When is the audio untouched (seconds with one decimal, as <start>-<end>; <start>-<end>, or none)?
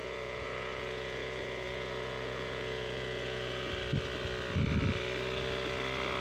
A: 3.7-6.2